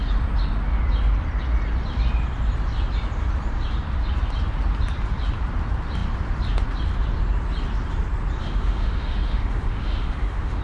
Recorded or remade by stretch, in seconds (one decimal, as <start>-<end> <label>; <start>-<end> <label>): 0.0-8.4 recorded; 8.4-10.6 remade